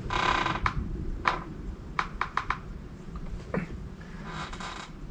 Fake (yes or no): yes